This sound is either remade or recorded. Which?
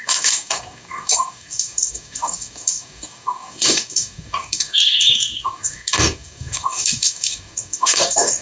remade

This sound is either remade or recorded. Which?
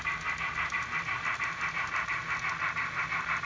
recorded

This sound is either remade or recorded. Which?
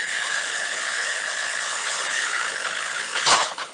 remade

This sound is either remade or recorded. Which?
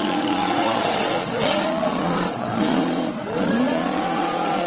remade